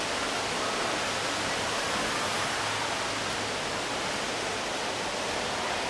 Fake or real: real